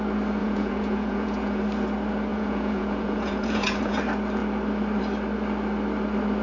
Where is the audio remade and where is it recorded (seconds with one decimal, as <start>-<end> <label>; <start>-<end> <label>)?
0.0-0.4 recorded; 0.4-1.6 remade; 1.6-2.3 recorded; 2.3-4.0 remade; 4.0-6.4 recorded